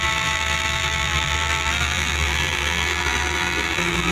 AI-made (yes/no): yes